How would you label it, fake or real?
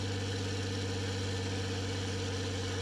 real